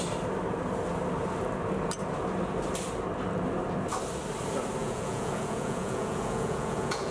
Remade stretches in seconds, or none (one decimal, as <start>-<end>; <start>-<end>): 4.8-7.1